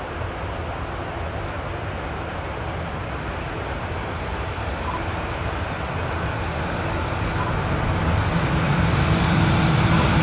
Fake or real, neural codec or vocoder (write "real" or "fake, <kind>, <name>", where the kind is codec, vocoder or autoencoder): real